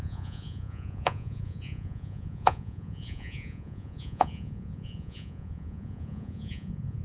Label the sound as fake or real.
fake